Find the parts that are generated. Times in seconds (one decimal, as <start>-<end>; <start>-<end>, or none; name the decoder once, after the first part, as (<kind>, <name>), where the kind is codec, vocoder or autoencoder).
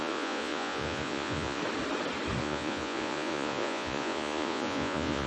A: 0.0-1.6 (vocoder, Vocos); 2.4-5.3